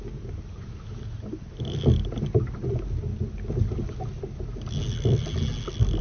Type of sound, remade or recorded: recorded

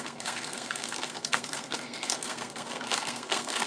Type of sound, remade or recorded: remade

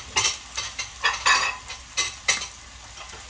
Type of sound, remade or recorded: recorded